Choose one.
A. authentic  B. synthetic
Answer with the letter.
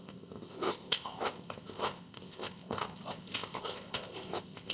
B